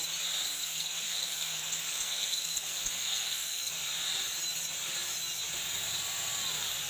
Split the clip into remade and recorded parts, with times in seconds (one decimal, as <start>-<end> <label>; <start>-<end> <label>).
0.0-0.6 recorded; 0.6-3.7 remade; 3.7-6.9 recorded